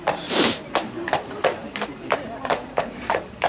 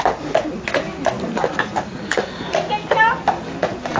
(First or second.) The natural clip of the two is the second